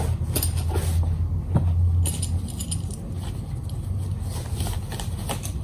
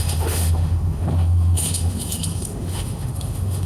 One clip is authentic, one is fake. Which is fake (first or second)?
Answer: second